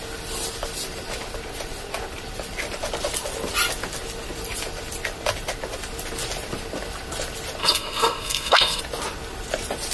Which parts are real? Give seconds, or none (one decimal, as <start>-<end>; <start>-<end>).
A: 0.0-7.6; 8.8-9.9